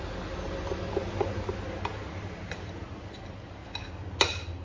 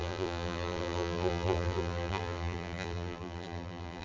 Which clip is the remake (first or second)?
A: second